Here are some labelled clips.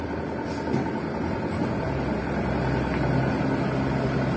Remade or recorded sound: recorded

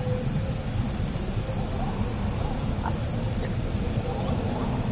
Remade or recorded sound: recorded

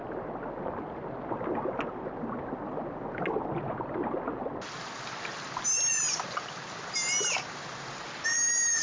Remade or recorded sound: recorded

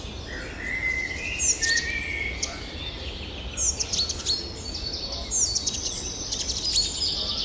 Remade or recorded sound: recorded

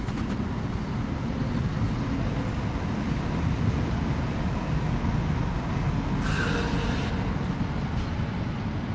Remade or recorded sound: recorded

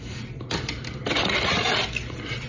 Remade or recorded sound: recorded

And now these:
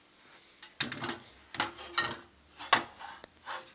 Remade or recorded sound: recorded